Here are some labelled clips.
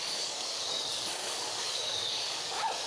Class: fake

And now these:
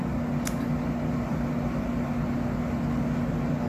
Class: real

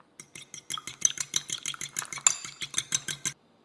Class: real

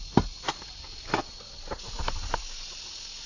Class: real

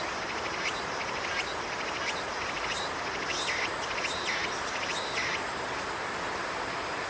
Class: real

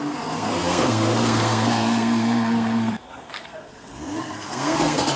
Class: fake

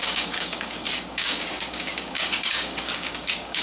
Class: fake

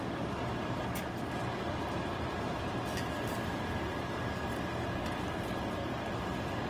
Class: real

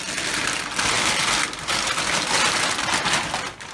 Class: real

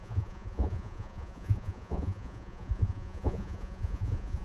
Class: fake